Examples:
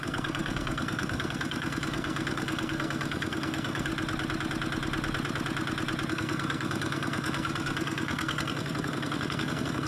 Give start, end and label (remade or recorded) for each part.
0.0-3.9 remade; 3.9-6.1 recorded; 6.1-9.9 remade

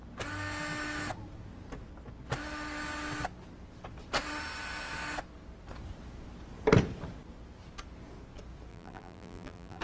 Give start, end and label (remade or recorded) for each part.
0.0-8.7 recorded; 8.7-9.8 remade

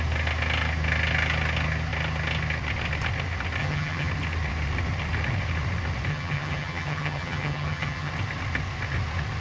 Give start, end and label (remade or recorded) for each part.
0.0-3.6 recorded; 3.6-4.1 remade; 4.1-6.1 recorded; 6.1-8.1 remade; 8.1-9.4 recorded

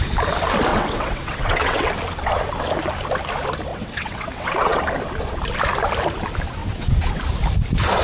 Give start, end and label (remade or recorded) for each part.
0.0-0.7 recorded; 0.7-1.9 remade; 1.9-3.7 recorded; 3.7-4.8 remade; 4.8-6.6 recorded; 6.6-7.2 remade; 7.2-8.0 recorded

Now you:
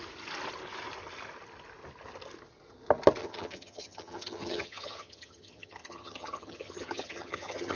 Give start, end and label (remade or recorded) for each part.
0.0-3.2 recorded; 3.2-7.8 remade